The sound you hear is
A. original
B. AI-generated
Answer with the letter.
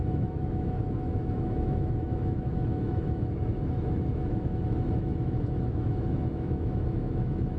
B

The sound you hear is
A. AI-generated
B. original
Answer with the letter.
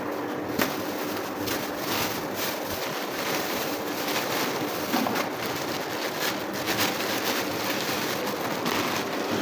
B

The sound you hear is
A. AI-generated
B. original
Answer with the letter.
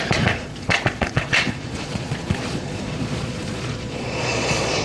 A